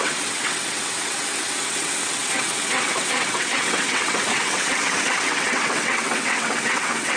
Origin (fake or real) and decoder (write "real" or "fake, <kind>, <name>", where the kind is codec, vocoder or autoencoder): fake, vocoder, WaveNeXt